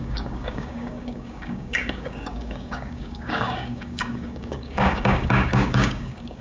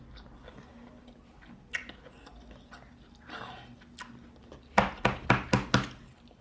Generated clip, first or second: first